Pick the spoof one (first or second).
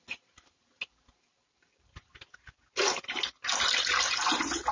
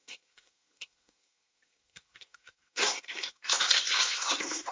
second